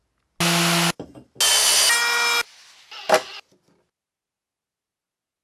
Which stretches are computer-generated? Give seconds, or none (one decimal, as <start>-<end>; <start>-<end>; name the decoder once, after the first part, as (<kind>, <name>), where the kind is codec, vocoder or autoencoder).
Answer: none